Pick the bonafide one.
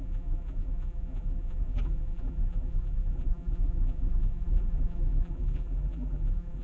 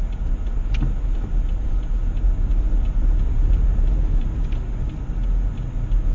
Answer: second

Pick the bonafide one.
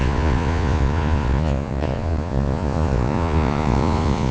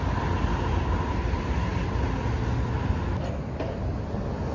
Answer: second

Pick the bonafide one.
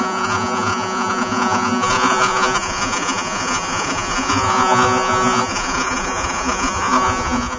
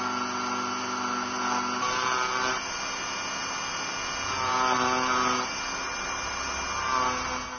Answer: second